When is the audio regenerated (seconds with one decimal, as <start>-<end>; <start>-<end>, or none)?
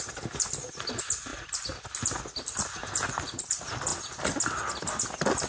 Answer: none